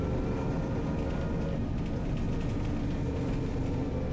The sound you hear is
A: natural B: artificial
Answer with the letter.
A